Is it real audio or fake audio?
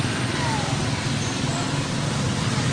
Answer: real